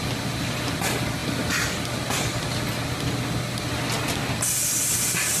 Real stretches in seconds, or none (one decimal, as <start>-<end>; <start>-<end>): 0.0-5.4